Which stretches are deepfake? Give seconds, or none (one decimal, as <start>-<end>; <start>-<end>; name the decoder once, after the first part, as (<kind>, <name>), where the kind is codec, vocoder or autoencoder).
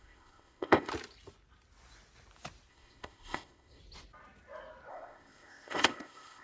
0.0-0.9 (codec, ZipCodec); 2.7-3.8; 4.9-6.4